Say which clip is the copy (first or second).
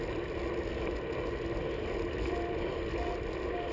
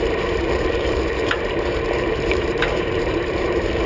second